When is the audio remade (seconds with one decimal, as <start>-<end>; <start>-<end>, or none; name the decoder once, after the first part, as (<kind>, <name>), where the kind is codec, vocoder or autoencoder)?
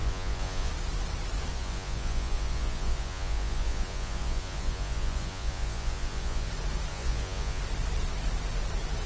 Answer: 0.0-0.7 (vocoder, Vocos); 1.5-6.5; 6.9-7.6